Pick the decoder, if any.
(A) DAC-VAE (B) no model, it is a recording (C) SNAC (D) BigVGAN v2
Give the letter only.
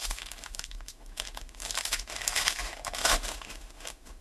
A